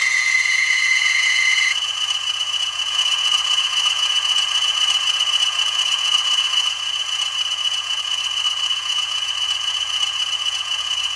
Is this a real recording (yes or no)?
no